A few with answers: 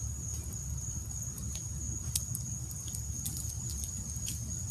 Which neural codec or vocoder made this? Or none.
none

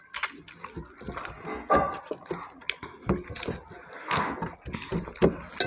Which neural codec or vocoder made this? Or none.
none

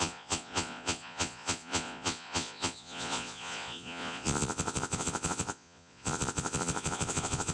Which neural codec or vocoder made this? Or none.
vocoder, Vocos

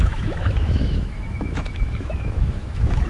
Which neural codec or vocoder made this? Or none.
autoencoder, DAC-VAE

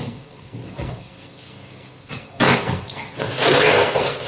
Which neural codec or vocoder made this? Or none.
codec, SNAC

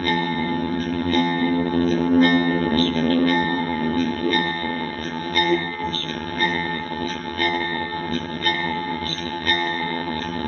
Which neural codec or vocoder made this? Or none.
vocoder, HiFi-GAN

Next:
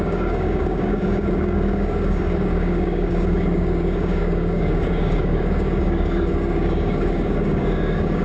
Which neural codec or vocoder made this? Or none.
codec, DAC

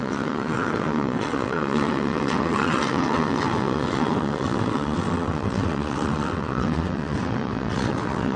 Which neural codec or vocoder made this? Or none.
vocoder, WaveNeXt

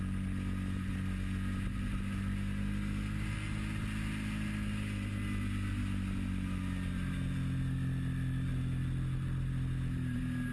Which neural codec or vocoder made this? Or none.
none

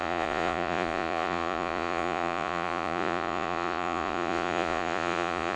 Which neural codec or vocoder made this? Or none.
vocoder, Vocos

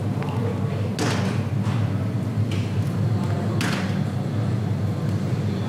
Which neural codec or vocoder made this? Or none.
none